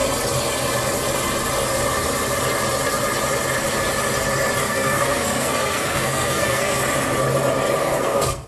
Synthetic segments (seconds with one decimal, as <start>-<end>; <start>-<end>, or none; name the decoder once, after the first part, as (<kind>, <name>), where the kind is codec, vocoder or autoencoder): 4.6-6.8 (codec, SNAC); 7.8-8.5